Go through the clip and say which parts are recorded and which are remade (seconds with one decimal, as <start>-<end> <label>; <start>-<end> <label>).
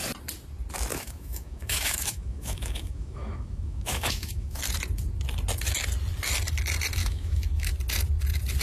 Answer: 0.0-0.9 recorded; 0.9-4.6 remade; 4.6-7.0 recorded; 7.0-7.7 remade; 7.7-8.6 recorded